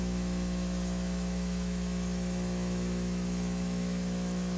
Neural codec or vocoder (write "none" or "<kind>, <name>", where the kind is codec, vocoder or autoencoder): autoencoder, DAC-VAE